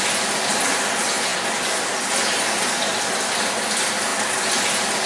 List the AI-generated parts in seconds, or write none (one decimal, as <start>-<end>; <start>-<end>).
none